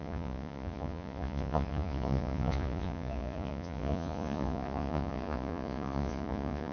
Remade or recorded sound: remade